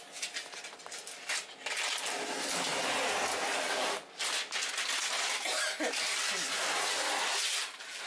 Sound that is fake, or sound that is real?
real